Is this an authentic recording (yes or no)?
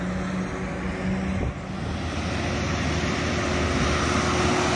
yes